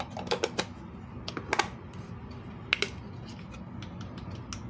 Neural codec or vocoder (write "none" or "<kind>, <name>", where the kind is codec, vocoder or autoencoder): none